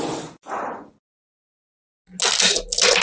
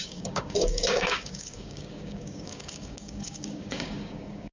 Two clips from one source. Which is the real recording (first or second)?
first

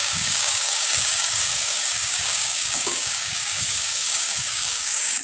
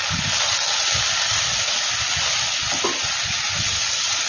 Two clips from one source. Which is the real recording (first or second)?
second